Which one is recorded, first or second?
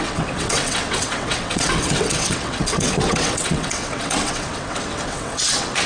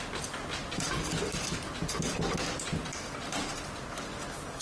second